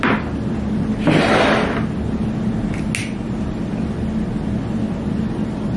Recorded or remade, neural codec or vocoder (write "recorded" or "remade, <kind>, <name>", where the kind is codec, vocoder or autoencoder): recorded